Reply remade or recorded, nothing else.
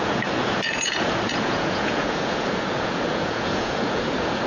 remade